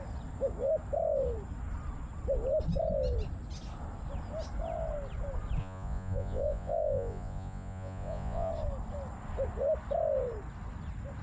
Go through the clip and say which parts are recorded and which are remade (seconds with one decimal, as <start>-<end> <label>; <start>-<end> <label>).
0.0-5.6 recorded; 5.6-8.5 remade; 8.5-11.2 recorded